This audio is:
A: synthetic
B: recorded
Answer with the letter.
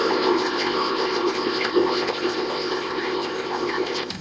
A